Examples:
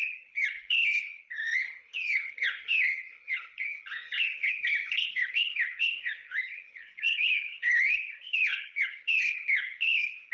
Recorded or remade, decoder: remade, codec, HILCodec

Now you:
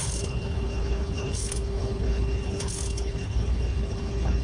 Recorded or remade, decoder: remade, codec, HILCodec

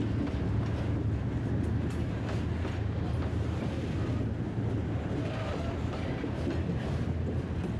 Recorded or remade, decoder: recorded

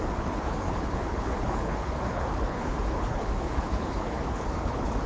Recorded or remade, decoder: remade, codec, HILCodec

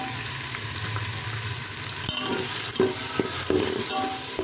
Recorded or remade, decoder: recorded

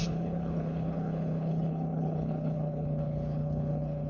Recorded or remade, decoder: remade, codec, HILCodec